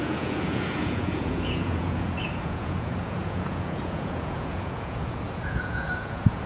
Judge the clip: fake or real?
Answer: fake